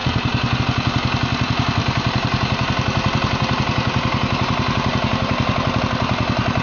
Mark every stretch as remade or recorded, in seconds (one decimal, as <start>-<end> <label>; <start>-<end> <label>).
0.0-0.6 remade; 0.6-1.8 recorded; 1.8-5.8 remade; 5.8-6.6 recorded